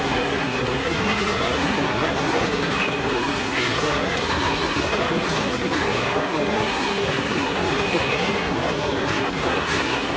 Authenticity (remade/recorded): remade